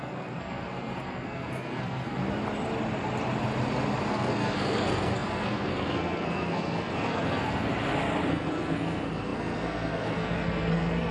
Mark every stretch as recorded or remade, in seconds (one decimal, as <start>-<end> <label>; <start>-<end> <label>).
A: 0.0-2.2 remade; 2.2-4.1 recorded; 4.1-7.7 remade; 7.7-8.3 recorded; 8.3-11.1 remade